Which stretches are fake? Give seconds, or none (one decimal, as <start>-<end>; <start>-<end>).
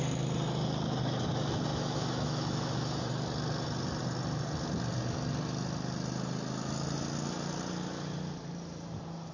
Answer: 1.7-3.1